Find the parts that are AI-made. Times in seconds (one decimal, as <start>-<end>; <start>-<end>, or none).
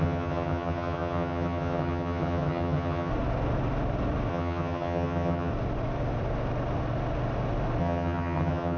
0.0-3.1; 4.3-5.5; 7.8-8.8